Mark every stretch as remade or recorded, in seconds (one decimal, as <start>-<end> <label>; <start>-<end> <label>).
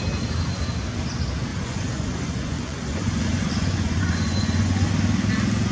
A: 0.0-1.5 recorded; 1.5-4.9 remade; 4.9-5.7 recorded